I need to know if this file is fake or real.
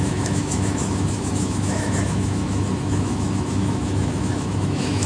fake